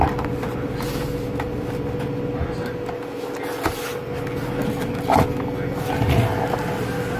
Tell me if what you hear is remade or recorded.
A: recorded